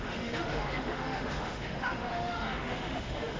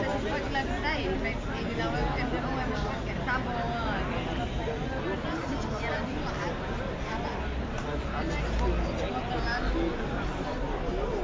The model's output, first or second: first